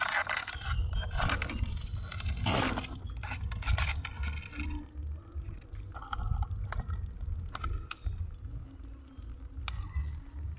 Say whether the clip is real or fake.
real